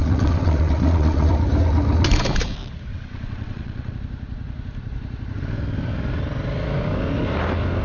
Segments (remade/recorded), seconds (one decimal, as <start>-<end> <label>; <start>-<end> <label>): 0.0-1.3 remade; 1.3-2.9 recorded; 2.9-3.9 remade; 3.9-7.8 recorded